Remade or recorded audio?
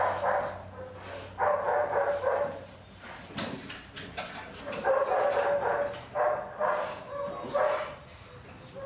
recorded